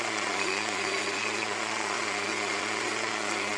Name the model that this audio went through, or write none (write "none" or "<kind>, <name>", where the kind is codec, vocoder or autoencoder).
vocoder, Vocos